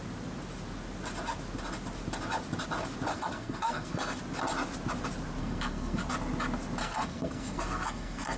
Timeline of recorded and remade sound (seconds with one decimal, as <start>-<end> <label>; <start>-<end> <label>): 0.0-3.1 recorded; 3.1-4.2 remade; 4.2-5.4 recorded; 5.4-6.0 remade; 6.0-6.8 recorded; 6.8-8.4 remade